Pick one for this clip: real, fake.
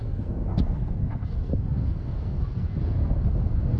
fake